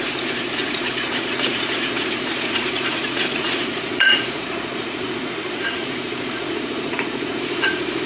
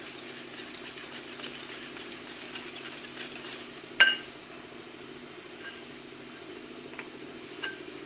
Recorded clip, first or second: second